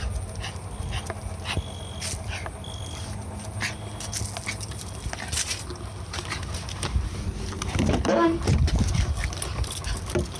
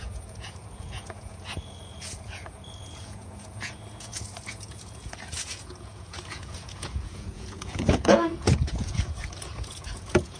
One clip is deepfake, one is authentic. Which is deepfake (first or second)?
second